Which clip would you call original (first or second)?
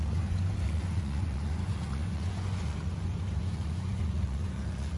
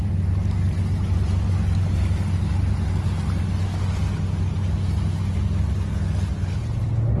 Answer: second